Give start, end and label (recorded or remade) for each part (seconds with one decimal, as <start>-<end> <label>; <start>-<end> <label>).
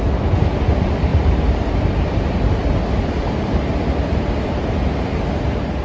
0.0-1.1 recorded; 1.1-4.6 remade; 4.6-5.8 recorded